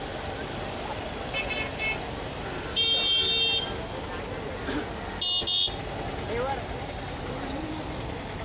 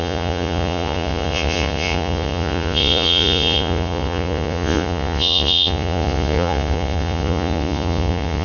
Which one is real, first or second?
first